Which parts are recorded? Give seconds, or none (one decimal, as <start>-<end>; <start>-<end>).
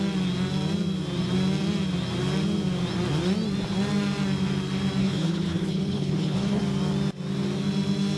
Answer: 0.0-5.0; 6.6-8.2